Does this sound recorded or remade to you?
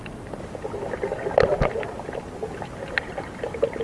recorded